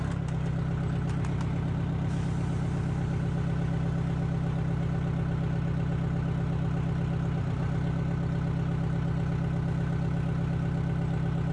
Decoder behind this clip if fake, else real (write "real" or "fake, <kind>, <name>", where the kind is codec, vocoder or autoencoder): real